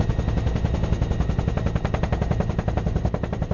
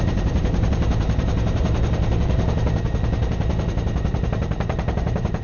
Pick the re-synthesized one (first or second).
second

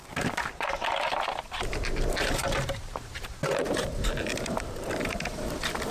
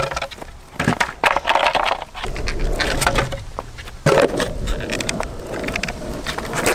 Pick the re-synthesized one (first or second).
first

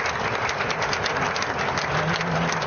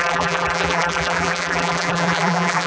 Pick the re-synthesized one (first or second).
second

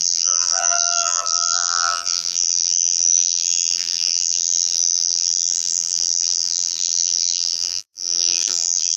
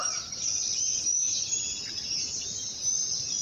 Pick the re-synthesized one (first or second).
first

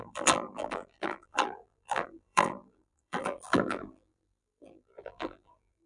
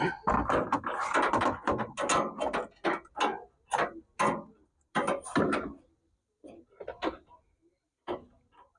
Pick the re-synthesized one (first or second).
first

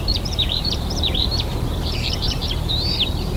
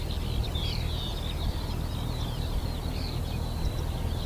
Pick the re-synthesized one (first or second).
first